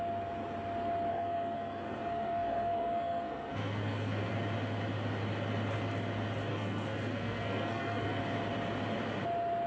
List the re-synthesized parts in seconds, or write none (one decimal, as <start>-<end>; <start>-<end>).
1.1-4.3; 6.5-8.2